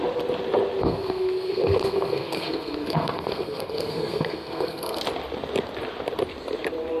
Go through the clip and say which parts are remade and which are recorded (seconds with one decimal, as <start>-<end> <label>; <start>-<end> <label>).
0.0-0.8 recorded; 0.8-5.0 remade; 5.0-7.0 recorded